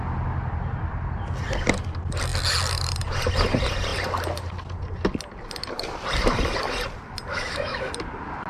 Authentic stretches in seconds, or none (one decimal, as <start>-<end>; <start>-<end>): 0.0-7.3; 7.9-8.5